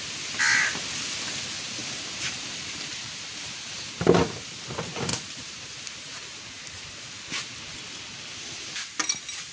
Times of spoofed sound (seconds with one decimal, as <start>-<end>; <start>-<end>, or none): 1.8-3.8; 5.1-6.2